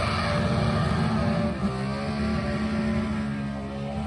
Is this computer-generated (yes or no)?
no